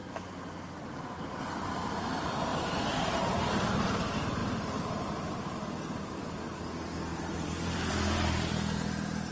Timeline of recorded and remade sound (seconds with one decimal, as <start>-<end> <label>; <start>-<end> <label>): 0.0-2.5 recorded; 2.5-3.2 remade; 3.2-7.1 recorded; 7.1-8.5 remade; 8.5-9.3 recorded